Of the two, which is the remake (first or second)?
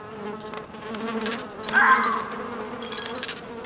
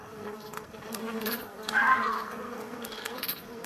second